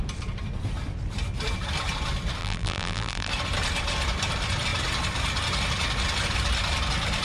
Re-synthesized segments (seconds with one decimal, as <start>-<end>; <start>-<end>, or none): 2.4-3.3